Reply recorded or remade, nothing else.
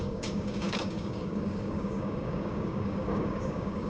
remade